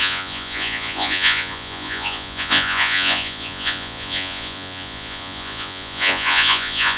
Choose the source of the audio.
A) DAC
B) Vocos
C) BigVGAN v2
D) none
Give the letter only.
B